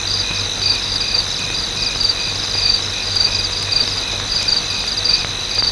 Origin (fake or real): real